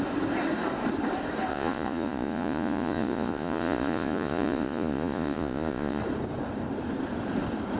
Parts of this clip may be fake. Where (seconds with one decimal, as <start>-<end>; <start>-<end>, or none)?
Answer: 1.5-6.0